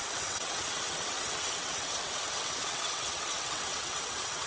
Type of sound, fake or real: fake